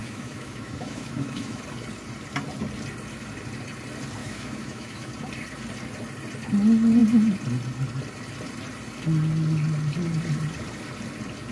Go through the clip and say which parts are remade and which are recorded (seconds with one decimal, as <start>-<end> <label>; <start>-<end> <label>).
0.0-1.6 remade; 1.6-4.2 recorded; 4.2-5.1 remade; 5.1-11.5 recorded